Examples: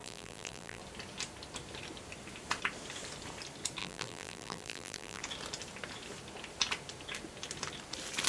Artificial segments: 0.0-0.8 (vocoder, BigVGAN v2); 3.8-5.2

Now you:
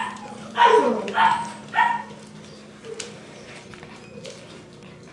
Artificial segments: 0.0-1.1 (vocoder, BigVGAN v2)

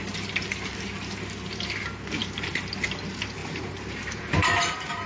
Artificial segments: 2.2-2.7 (vocoder, BigVGAN v2); 3.4-5.1